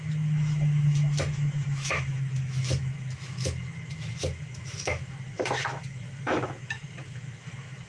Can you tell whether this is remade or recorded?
remade